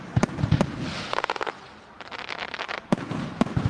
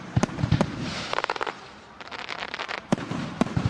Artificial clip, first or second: second